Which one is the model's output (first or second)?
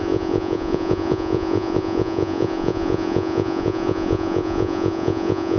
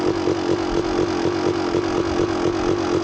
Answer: first